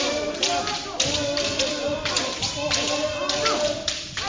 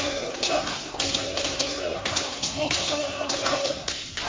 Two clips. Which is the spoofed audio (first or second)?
second